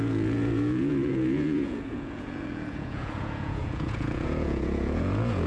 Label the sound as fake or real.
fake